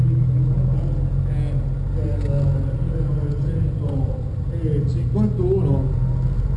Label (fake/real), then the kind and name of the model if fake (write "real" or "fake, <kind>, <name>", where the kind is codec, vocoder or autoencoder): real